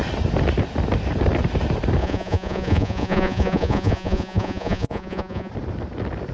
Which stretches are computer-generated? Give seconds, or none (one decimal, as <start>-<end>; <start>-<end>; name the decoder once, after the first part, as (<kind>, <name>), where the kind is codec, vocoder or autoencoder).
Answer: 2.0-5.5 (vocoder, Vocos)